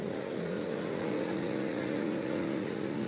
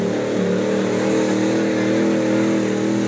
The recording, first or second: second